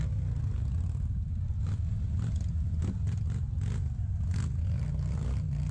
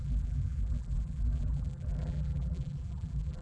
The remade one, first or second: second